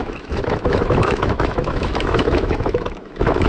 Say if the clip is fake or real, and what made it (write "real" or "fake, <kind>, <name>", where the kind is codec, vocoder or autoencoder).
fake, autoencoder, DAC-VAE